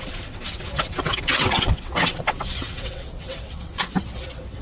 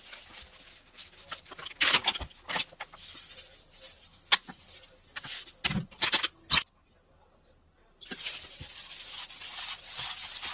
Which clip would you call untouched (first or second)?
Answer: second